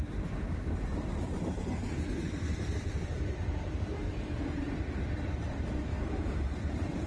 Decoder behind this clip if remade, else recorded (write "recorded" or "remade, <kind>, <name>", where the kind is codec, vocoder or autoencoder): remade, vocoder, BigVGAN v2